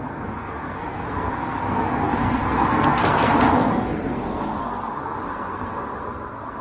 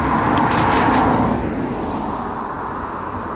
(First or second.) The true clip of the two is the second